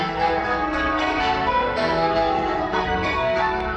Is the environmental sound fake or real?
fake